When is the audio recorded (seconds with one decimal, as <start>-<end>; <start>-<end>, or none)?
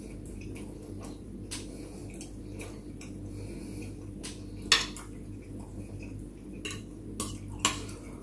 0.0-8.2